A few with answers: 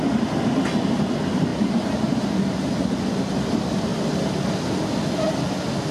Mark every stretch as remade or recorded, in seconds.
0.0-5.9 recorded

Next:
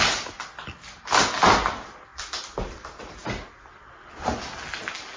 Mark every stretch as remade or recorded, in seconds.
0.0-5.2 recorded

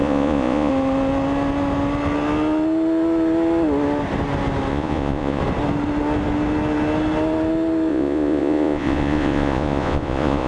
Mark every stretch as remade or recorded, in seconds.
0.0-0.7 remade; 0.7-4.7 recorded; 4.7-5.4 remade; 5.4-7.9 recorded; 7.9-10.5 remade

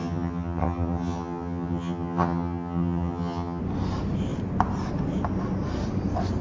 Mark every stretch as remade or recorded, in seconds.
0.0-3.6 remade; 3.6-6.4 recorded

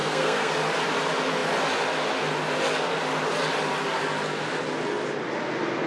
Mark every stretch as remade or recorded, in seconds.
0.0-0.5 remade; 0.5-5.9 recorded

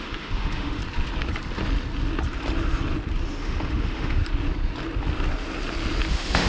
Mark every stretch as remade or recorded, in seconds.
0.0-0.8 remade; 0.8-3.4 recorded; 3.4-4.2 remade; 4.2-6.1 recorded; 6.1-6.5 remade

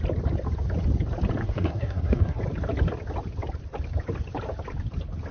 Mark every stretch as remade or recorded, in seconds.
0.0-1.4 recorded; 1.4-2.4 remade; 2.4-5.3 recorded